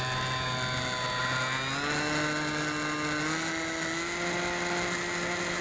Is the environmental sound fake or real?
real